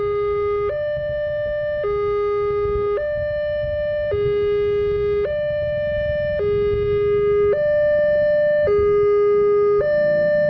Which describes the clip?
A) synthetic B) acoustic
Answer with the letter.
B